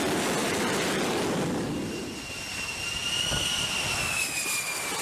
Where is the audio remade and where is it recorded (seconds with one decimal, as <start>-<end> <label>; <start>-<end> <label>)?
0.0-0.4 recorded; 0.4-2.3 remade; 2.3-5.0 recorded